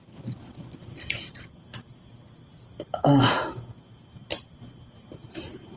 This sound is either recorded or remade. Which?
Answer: recorded